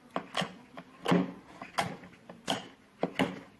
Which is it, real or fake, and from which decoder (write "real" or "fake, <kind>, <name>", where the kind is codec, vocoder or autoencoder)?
real